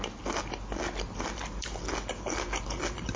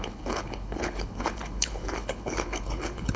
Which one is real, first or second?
first